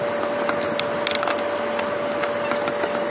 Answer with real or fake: real